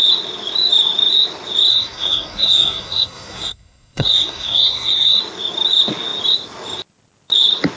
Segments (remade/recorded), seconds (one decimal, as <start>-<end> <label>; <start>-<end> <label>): 0.0-1.7 recorded; 1.7-5.2 remade; 5.2-7.8 recorded